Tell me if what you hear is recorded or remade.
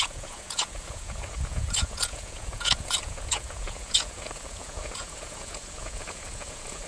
remade